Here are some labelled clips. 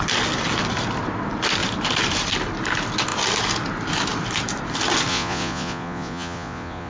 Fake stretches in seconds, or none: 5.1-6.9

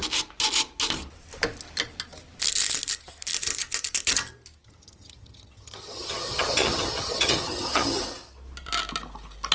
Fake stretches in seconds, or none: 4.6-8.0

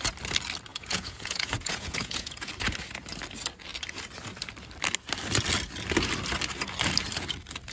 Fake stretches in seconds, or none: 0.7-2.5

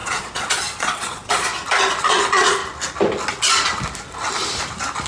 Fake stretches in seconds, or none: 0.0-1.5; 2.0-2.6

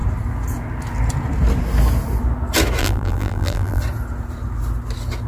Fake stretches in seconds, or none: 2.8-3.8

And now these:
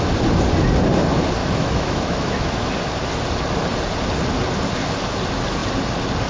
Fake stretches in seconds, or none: 1.4-2.7

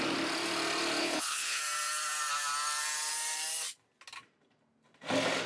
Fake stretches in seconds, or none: 1.0-1.6